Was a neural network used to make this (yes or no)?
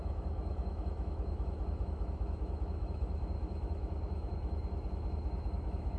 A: yes